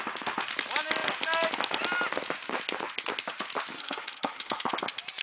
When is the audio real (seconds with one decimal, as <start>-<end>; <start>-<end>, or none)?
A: 0.0-3.8; 4.7-5.2